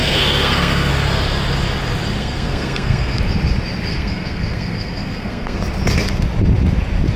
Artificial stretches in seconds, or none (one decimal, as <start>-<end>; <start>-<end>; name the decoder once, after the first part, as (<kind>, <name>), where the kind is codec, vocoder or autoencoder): 0.0-0.9 (codec, SNAC); 2.2-3.2; 3.9-5.6